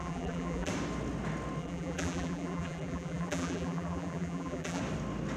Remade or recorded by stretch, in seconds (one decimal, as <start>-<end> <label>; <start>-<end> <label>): 0.0-0.7 remade; 0.7-1.6 recorded; 1.6-4.8 remade; 4.8-5.4 recorded